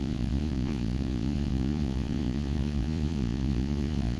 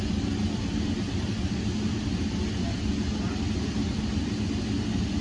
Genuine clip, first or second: second